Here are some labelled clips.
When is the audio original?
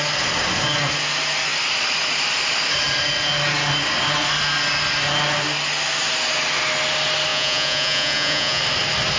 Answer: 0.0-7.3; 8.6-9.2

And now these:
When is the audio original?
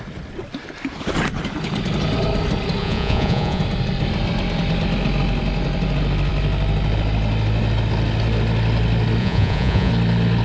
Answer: 0.0-2.8; 3.6-9.2; 9.9-10.4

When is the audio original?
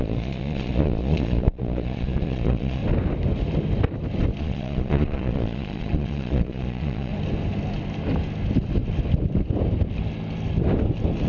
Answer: 2.8-4.4; 7.1-11.3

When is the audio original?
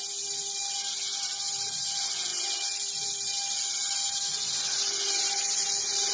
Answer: 0.0-6.1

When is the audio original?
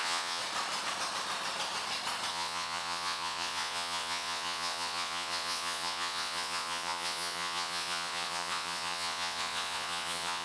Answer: 0.4-2.3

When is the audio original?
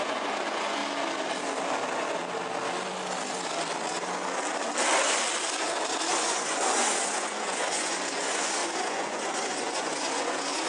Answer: 0.8-6.1